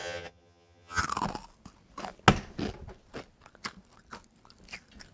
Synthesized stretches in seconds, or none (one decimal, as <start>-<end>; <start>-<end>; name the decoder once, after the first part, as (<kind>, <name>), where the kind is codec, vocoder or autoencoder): 0.0-1.0 (vocoder, HiFi-GAN)